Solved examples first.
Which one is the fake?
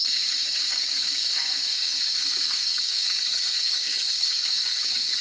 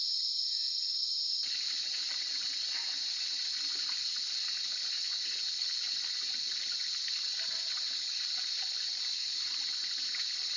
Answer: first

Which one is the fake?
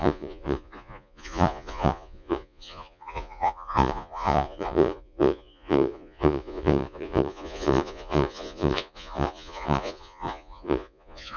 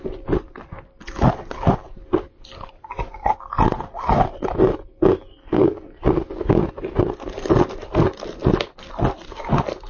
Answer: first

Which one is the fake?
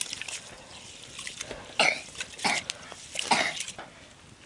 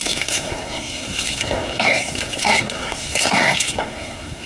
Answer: second